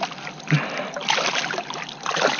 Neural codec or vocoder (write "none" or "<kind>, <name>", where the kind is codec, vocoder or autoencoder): none